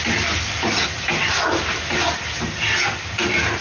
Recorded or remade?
recorded